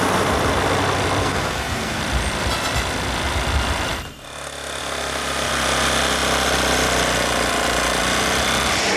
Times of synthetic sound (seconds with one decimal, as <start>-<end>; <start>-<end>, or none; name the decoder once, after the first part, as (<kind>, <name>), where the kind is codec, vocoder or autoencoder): 1.2-2.0 (codec, SNAC)